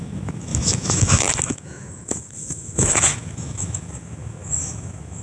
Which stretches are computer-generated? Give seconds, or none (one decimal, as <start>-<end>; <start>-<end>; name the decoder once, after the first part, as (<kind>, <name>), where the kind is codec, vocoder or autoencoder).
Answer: 0.0-5.2 (autoencoder, DAC-VAE)